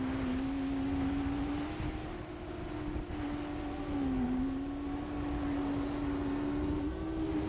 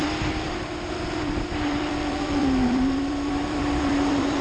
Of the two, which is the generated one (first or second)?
second